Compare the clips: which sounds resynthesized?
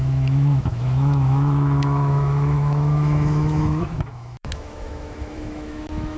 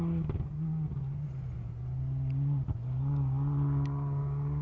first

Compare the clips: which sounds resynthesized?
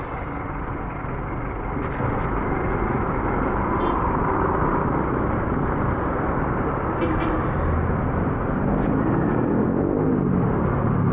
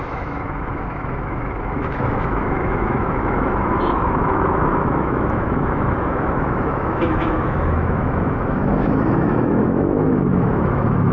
second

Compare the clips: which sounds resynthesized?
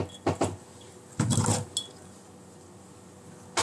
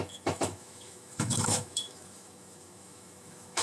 second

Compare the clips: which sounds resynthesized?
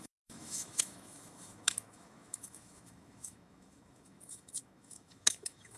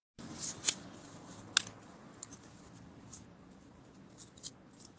first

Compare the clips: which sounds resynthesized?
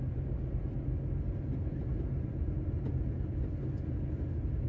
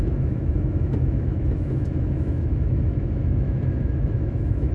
second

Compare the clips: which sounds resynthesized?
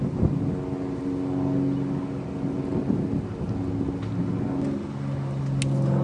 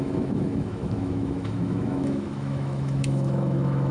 second